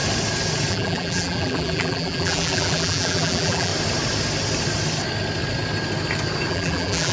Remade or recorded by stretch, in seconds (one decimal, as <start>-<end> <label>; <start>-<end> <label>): 0.0-0.7 recorded; 0.7-3.7 remade; 3.7-6.5 recorded; 6.5-7.1 remade